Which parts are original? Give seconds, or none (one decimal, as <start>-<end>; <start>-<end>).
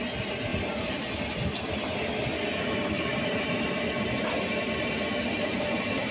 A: 0.0-3.1; 3.7-6.1